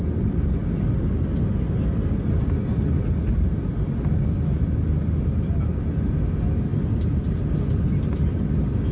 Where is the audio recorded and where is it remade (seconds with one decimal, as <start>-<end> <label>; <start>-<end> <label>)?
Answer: 0.0-8.9 recorded